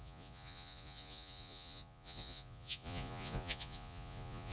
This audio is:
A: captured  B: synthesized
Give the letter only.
B